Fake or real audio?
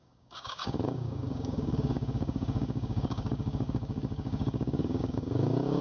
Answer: fake